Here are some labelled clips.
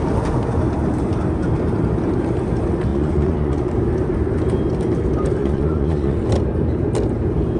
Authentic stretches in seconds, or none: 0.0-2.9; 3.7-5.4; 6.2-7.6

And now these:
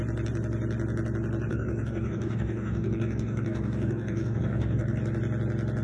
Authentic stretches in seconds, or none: 0.0-1.5; 5.0-5.8

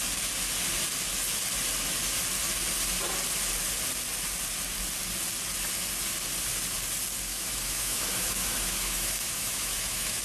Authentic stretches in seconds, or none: 0.0-7.3

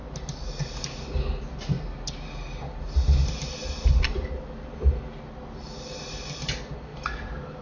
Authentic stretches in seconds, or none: 0.0-7.6

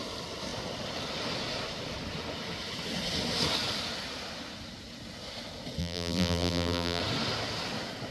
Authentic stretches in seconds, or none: 0.0-5.8; 7.0-8.1

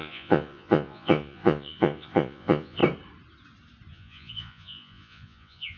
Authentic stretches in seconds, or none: 2.8-3.9

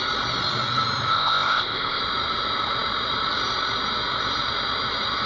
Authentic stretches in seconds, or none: 0.0-1.1; 2.0-5.3

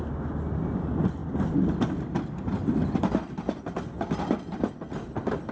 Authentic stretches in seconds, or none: 0.0-5.5